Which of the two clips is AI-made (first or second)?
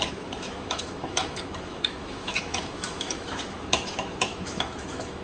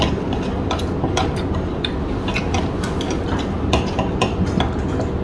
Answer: first